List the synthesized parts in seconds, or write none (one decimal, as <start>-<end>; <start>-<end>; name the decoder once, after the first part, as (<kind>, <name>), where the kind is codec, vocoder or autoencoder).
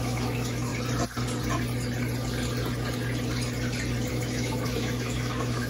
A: 0.0-0.7 (autoencoder, DAC-VAE); 4.1-5.7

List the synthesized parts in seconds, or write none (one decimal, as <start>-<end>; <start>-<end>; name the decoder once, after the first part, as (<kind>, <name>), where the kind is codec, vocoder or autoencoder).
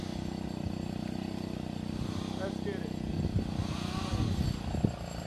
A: none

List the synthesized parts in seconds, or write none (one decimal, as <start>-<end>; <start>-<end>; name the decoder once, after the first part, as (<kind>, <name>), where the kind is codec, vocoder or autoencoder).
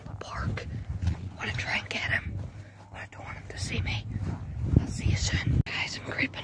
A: 1.0-1.5 (vocoder, Vocos)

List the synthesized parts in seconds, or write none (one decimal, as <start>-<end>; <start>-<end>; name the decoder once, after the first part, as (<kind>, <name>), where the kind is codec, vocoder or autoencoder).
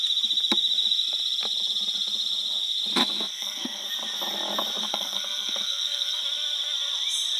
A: 3.0-3.9 (codec, SNAC); 4.8-6.2